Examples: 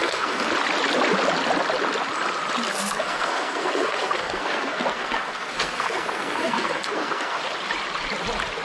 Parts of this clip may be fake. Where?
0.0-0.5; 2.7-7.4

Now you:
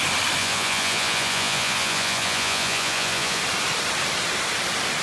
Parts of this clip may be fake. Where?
0.4-3.4